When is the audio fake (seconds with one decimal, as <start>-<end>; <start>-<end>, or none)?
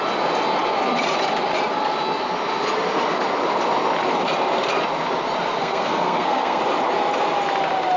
5.6-6.6